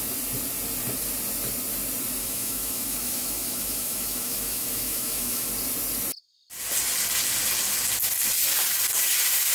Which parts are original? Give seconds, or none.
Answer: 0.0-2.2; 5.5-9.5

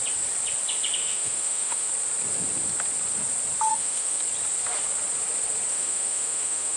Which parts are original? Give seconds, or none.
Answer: 0.0-1.0; 1.9-3.7; 4.2-5.7

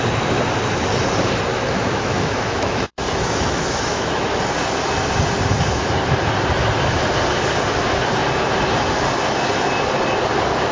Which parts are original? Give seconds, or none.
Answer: 0.0-1.5; 4.4-10.7